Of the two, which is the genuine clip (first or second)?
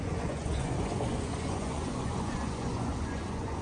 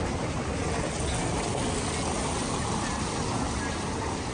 second